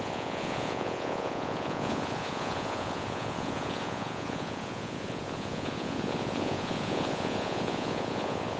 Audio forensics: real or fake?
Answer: fake